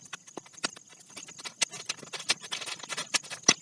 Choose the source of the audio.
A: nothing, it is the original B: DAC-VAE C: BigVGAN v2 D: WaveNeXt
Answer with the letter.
A